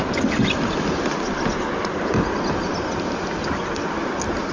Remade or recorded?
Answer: recorded